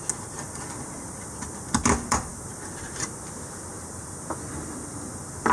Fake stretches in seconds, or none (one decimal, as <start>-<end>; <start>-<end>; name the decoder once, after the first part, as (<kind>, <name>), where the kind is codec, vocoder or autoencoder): none